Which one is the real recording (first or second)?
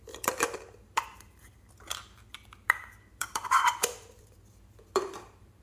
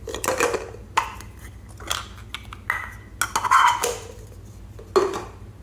second